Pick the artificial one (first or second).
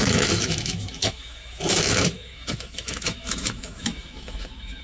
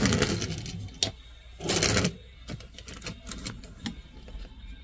first